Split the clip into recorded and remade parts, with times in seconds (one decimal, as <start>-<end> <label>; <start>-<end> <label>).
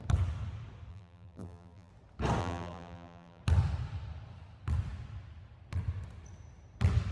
0.0-0.9 recorded; 0.9-1.9 remade; 1.9-2.4 recorded; 2.4-3.4 remade; 3.4-7.1 recorded